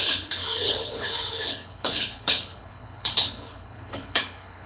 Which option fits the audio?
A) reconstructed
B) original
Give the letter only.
A